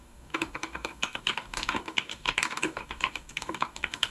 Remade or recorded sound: remade